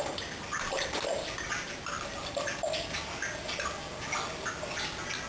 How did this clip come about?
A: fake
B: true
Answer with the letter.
B